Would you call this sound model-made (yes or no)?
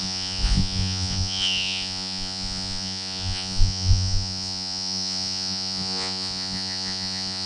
yes